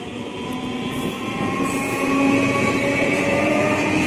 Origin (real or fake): fake